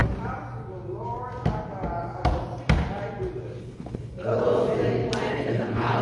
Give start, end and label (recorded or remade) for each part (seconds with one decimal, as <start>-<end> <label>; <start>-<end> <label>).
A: 0.0-3.6 recorded; 3.6-4.4 remade; 4.4-5.3 recorded; 5.3-6.0 remade